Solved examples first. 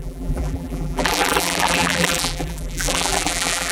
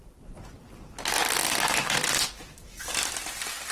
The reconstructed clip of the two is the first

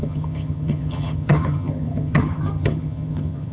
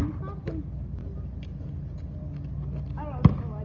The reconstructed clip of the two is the first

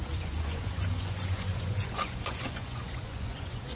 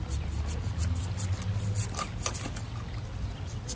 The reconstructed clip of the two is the first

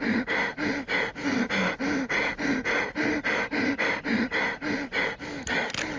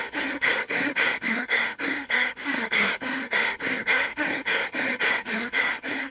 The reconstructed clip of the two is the second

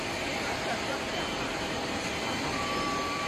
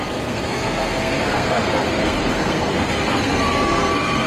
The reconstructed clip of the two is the second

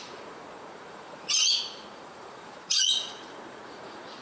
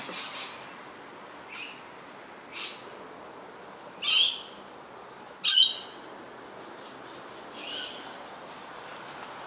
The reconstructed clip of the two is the first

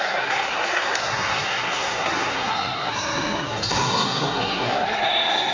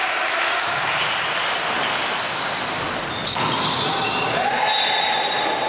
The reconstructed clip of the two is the first